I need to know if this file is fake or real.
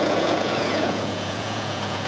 fake